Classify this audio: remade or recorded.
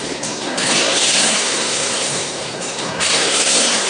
remade